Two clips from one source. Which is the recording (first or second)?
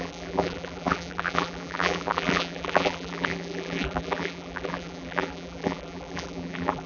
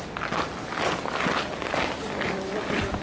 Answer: second